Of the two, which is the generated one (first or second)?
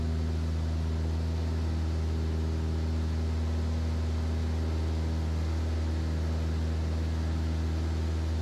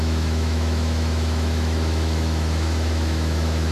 second